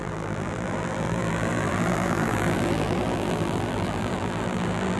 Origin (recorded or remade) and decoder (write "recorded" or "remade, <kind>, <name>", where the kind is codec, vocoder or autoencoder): remade, vocoder, BigVGAN v2